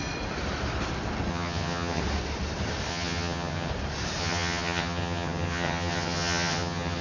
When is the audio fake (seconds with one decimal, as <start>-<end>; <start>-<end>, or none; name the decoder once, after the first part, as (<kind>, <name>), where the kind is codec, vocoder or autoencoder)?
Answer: 1.3-2.0 (vocoder, HiFi-GAN); 2.9-3.7; 4.2-7.0

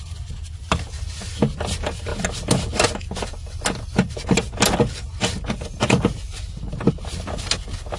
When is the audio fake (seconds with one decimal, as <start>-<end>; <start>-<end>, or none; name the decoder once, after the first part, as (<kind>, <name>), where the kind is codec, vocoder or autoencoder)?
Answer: none